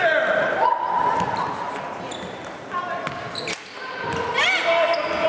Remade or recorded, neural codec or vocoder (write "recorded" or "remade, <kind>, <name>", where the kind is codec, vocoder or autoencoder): recorded